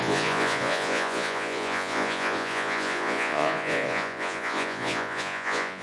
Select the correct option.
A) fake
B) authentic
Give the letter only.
A